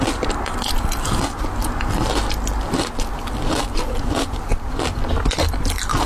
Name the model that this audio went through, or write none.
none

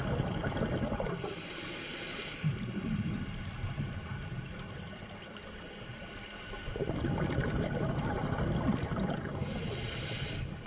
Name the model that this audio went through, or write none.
vocoder, BigVGAN v2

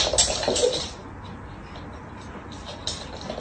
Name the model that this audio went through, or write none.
none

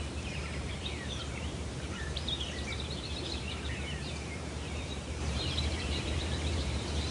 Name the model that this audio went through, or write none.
vocoder, BigVGAN v2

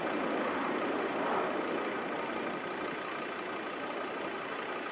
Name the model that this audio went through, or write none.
none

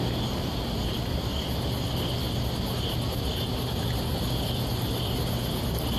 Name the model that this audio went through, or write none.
none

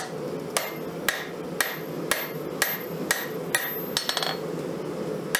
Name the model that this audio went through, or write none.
none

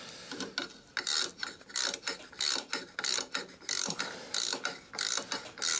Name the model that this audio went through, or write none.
none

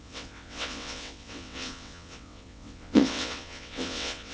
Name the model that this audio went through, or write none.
vocoder, WaveNeXt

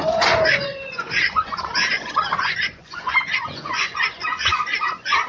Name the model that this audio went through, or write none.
vocoder, Vocos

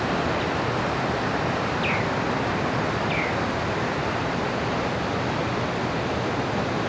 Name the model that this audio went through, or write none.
none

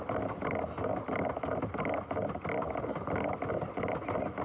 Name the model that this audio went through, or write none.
none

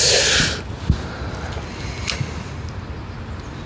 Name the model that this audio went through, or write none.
none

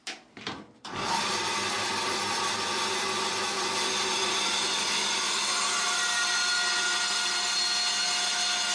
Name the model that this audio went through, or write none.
none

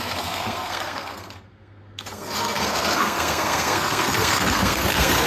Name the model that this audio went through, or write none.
codec, SNAC